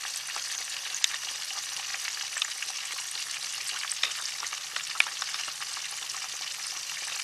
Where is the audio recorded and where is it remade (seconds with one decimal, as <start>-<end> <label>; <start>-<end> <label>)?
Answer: 0.0-7.2 recorded